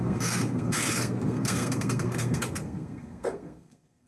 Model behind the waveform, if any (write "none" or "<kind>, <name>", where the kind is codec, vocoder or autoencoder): codec, SNAC